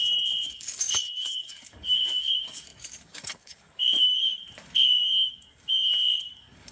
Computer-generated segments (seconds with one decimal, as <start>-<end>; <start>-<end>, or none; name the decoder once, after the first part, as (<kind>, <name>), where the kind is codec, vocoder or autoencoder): 0.0-6.7 (codec, DAC)